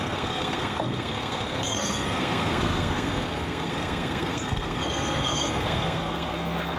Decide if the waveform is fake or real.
fake